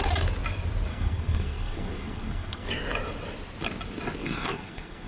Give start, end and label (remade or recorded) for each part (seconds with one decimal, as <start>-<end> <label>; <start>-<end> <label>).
0.0-0.9 recorded; 0.9-2.7 remade; 2.7-4.2 recorded; 4.2-5.1 remade